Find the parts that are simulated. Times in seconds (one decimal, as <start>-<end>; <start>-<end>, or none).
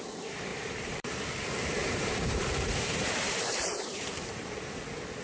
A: 0.5-1.2; 1.8-4.8